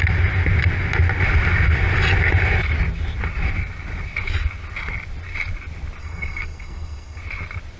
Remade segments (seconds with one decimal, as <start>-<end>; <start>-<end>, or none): 6.0-7.2